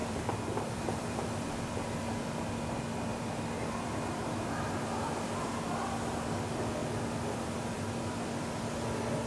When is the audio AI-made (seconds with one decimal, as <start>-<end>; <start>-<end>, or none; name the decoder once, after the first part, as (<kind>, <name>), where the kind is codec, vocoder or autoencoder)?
0.0-1.5 (vocoder, BigVGAN v2); 3.1-5.6; 6.8-8.8